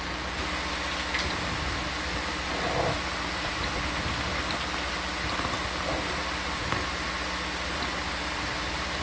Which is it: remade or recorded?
recorded